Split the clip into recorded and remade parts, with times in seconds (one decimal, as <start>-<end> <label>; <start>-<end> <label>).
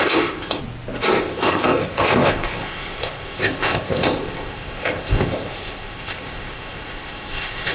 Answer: 0.0-0.6 remade; 0.6-1.2 recorded; 1.2-7.7 remade